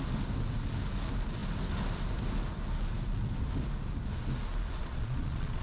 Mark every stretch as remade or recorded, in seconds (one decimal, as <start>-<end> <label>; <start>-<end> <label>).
0.0-4.8 recorded; 4.8-5.6 remade